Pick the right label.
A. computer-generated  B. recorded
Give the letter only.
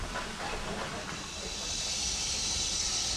B